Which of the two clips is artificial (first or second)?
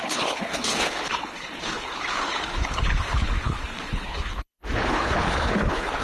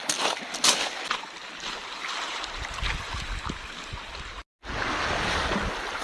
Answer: first